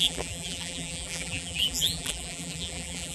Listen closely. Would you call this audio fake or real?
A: fake